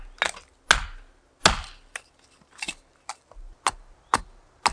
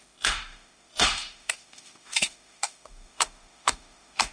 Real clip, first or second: first